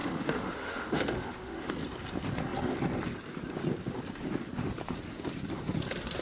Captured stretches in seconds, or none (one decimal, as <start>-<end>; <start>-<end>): 1.7-6.2

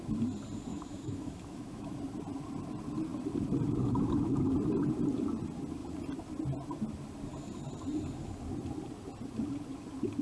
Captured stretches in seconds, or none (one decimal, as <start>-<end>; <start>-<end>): 0.0-0.7; 2.0-10.2